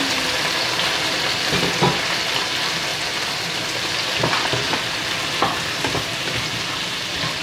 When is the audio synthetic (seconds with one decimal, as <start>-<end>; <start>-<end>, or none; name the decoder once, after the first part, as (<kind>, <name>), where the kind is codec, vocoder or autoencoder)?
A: none